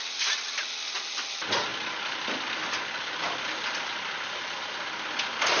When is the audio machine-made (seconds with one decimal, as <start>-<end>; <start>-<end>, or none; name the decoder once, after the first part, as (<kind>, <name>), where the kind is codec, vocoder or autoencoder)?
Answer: none